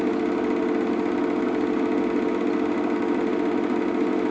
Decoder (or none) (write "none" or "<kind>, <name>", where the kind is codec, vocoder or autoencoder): none